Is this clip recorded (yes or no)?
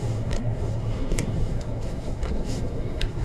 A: no